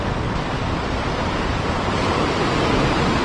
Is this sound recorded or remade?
recorded